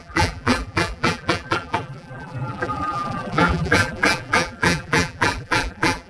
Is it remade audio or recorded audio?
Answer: remade